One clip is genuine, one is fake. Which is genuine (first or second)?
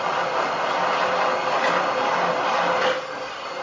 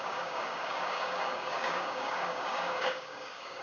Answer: first